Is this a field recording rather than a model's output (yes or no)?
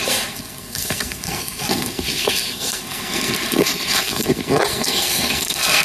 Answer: no